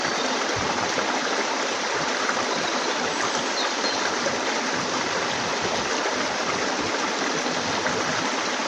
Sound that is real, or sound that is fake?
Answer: real